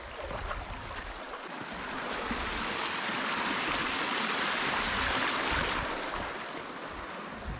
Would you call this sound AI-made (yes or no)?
no